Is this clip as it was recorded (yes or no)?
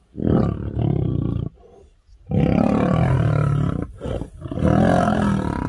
yes